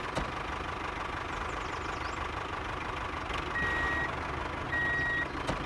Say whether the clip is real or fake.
real